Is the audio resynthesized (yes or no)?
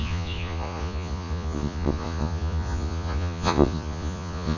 yes